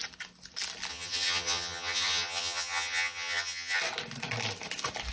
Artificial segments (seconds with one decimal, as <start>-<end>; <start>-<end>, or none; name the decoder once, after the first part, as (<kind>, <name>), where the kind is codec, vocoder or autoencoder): 0.9-3.8 (vocoder, HiFi-GAN)